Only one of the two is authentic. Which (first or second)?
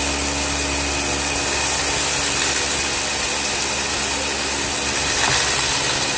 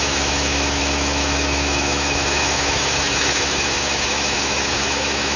first